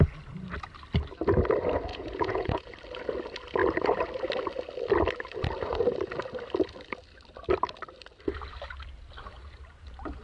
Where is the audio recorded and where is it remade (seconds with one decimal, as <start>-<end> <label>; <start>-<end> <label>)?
0.0-1.9 recorded; 1.9-2.6 remade; 2.6-10.2 recorded